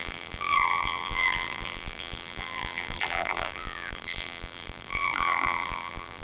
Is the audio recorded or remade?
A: remade